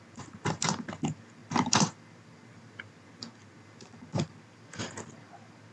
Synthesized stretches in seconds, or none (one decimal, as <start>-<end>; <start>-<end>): none